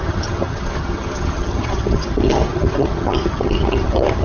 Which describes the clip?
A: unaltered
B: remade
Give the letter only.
B